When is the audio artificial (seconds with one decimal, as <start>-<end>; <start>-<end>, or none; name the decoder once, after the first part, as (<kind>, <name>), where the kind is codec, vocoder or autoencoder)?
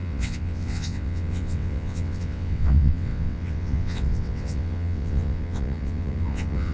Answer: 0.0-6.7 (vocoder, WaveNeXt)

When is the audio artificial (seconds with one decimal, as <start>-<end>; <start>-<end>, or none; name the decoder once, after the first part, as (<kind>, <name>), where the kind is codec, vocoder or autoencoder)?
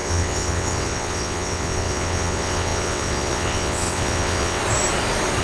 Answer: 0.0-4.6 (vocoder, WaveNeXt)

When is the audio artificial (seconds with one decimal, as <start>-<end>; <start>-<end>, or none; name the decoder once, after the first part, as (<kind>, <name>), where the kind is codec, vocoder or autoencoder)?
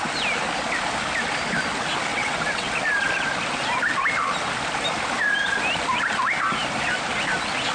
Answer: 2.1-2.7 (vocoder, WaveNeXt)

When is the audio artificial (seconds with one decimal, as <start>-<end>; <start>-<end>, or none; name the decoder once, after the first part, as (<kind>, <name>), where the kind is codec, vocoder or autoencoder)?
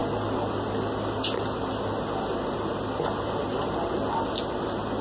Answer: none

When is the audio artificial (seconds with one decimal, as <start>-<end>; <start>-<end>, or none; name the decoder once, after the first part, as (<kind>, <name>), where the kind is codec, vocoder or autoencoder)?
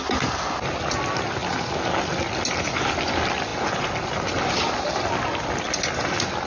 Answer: none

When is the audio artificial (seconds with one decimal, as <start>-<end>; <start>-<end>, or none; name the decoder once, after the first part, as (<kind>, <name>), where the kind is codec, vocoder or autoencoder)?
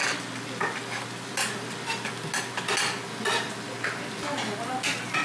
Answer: none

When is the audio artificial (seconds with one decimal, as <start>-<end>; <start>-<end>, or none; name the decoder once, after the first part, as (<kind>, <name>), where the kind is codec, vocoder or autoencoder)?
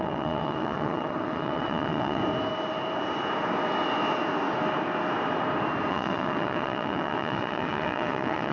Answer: 0.0-2.2 (vocoder, WaveNeXt); 5.9-8.5